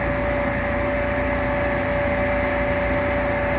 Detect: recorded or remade recorded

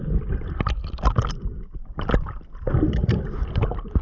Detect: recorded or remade recorded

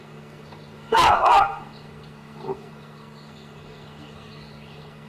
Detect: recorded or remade remade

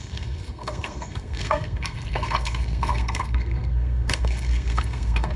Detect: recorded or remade remade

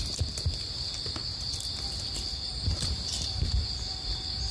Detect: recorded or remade recorded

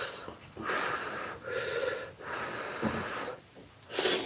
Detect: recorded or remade recorded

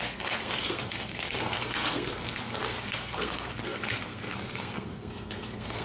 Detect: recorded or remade remade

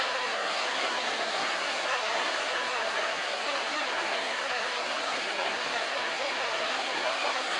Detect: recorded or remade remade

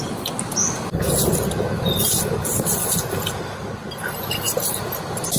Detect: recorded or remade recorded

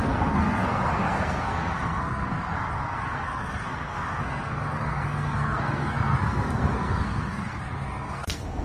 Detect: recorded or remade remade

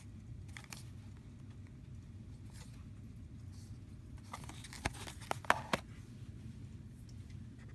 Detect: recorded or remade recorded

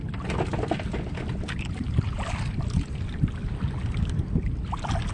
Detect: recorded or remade recorded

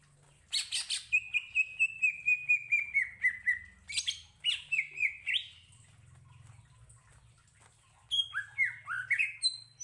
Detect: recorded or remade recorded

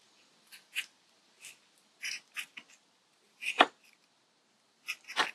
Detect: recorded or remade recorded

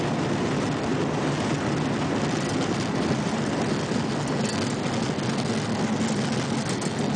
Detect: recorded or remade recorded